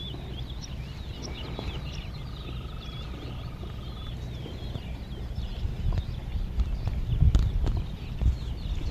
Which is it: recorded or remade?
recorded